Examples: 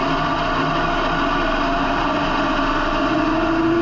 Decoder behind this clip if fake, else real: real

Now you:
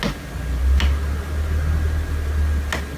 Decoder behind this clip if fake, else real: real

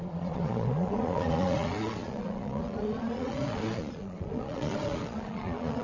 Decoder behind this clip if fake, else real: fake, vocoder, Vocos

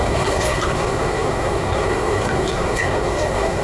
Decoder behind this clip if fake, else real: fake, codec, SNAC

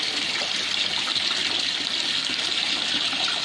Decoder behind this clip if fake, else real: real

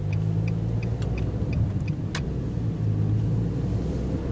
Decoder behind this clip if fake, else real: real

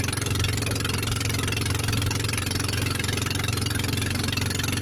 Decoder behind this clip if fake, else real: real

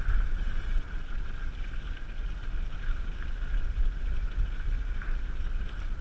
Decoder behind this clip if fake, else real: real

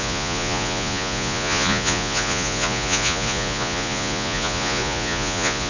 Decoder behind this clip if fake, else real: fake, vocoder, Vocos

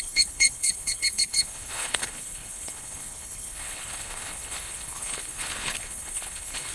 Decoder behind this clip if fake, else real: fake, codec, HILCodec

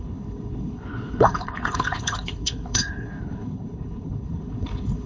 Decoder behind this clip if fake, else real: fake, codec, HILCodec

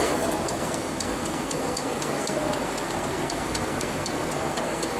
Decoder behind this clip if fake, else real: fake, codec, SNAC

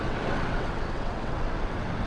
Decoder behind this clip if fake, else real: fake, vocoder, WaveNeXt